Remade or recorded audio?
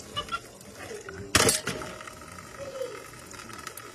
recorded